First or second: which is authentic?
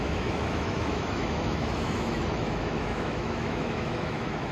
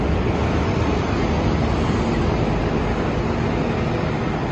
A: second